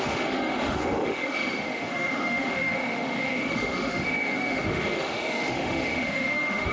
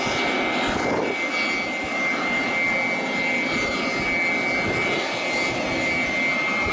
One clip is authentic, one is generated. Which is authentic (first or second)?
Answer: second